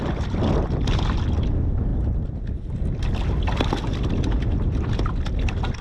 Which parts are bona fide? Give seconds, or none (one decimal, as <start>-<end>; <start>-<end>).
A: 0.0-5.8